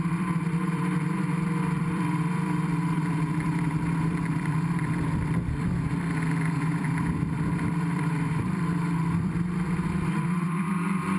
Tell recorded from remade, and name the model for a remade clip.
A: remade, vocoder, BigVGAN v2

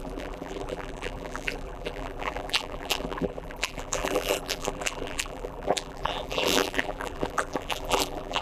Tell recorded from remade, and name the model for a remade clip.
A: remade, vocoder, BigVGAN v2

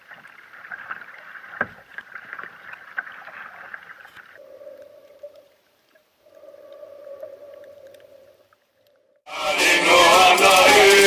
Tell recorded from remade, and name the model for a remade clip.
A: remade, vocoder, BigVGAN v2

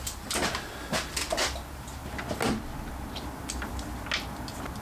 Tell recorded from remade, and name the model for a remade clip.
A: recorded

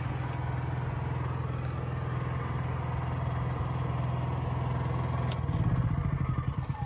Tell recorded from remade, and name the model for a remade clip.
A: recorded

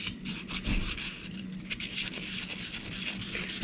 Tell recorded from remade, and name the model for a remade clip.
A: remade, vocoder, BigVGAN v2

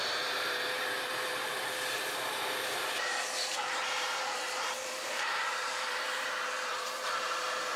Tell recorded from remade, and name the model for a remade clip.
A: remade, vocoder, BigVGAN v2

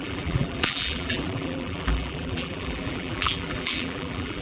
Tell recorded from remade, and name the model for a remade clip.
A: remade, vocoder, BigVGAN v2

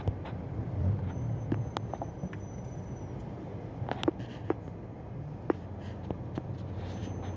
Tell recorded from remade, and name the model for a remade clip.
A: recorded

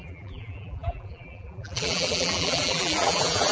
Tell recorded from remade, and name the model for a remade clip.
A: remade, vocoder, BigVGAN v2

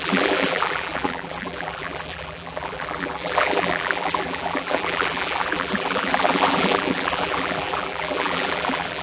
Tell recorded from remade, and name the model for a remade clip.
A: remade, vocoder, BigVGAN v2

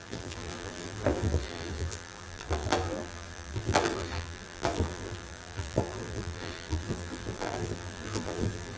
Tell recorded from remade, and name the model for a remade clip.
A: remade, vocoder, BigVGAN v2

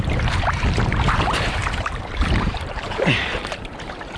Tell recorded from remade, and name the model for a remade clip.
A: remade, vocoder, BigVGAN v2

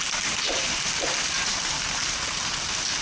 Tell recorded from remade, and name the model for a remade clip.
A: remade, vocoder, BigVGAN v2